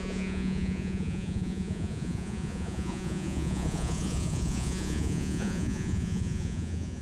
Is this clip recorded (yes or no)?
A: no